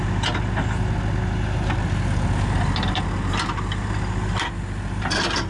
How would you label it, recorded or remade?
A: recorded